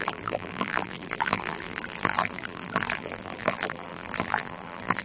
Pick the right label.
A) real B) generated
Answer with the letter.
B